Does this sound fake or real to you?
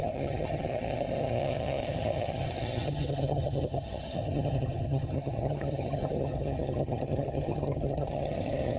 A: fake